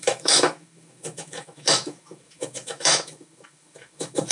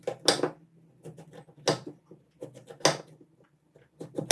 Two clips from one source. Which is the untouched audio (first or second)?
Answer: second